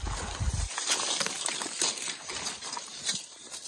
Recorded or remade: recorded